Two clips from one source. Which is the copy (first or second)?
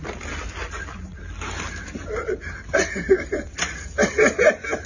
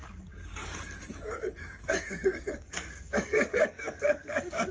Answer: second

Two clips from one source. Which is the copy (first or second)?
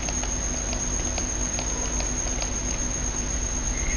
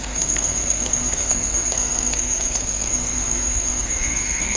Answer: second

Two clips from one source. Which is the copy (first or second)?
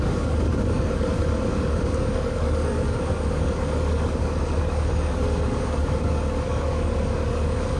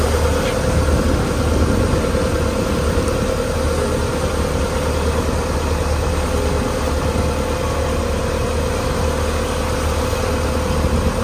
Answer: first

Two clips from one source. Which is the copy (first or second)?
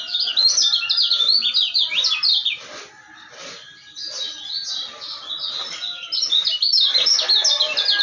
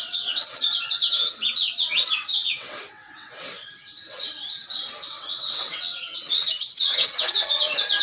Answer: second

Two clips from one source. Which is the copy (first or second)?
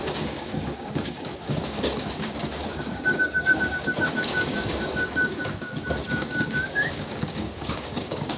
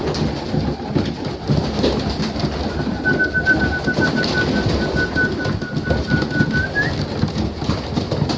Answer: first